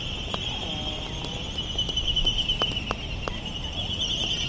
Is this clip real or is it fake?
real